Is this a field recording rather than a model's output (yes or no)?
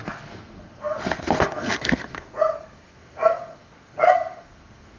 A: no